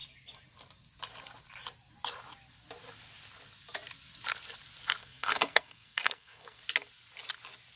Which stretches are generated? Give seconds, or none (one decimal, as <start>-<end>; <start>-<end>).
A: 5.0-6.6